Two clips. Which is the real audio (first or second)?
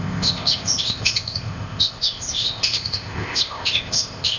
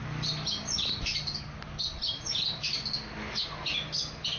second